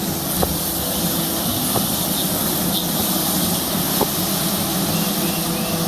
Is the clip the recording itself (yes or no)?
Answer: yes